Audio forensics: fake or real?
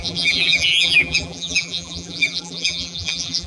fake